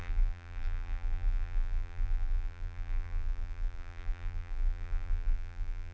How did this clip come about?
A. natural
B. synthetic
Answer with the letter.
B